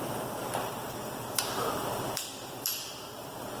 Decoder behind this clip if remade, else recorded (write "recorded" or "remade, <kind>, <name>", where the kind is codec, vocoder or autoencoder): remade, vocoder, BigVGAN v2